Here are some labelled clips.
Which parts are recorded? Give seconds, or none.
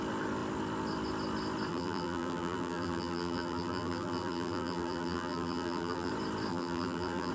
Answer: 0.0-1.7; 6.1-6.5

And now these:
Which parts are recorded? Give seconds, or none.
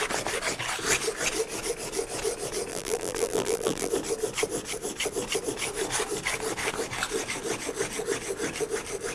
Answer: 0.0-2.7; 3.9-9.1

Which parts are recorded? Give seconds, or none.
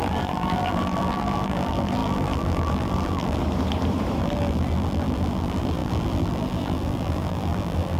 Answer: 3.4-4.2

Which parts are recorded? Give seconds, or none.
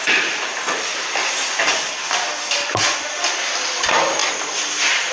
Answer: 0.0-4.2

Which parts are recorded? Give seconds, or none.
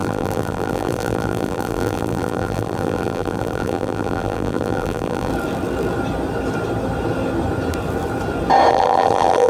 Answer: 5.3-8.7